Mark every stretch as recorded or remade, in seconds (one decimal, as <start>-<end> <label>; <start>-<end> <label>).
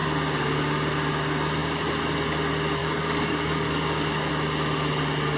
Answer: 0.0-2.8 recorded; 2.8-4.3 remade; 4.3-5.4 recorded